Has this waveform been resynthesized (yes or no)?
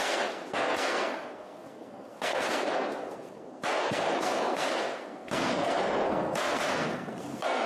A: yes